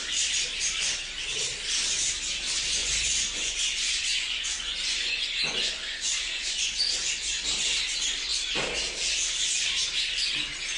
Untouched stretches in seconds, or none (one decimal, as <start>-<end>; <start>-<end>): 0.0-2.8; 6.8-10.8